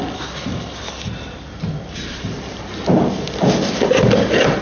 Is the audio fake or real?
fake